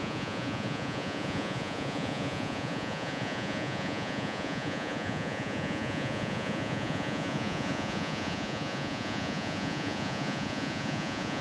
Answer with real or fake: fake